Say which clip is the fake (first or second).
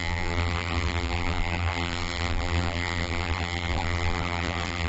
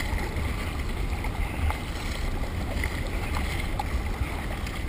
first